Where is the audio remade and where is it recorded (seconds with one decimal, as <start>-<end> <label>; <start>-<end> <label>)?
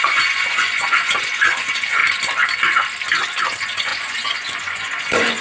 0.0-2.0 remade; 2.0-3.4 recorded; 3.4-5.4 remade